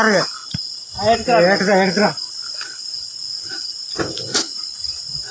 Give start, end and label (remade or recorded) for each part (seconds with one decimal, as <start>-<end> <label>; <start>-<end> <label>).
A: 0.0-4.5 recorded; 4.5-5.3 remade